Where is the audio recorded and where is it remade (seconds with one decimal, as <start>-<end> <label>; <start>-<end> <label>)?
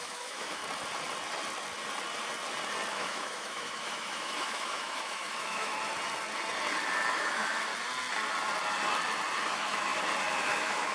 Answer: 0.0-0.6 remade; 0.6-2.9 recorded; 2.9-5.7 remade; 5.7-7.1 recorded; 7.1-7.7 remade; 7.7-9.4 recorded; 9.4-9.9 remade; 9.9-10.4 recorded; 10.4-10.9 remade